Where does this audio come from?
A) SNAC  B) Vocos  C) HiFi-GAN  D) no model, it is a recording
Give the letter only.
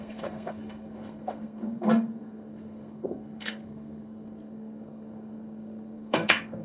A